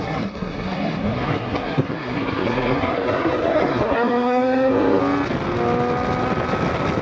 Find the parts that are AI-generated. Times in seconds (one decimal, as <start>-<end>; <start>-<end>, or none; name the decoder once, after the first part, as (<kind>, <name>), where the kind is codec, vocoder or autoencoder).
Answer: 0.0-5.0 (codec, SNAC)